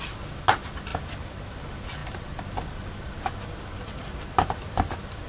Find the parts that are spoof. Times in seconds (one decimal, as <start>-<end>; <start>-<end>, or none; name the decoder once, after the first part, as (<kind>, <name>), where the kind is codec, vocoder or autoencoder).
0.9-1.5 (vocoder, BigVGAN v2)